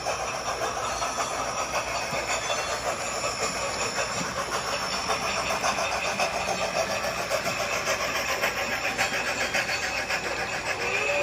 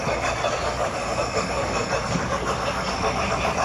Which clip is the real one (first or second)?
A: first